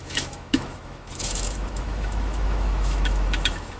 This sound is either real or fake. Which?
fake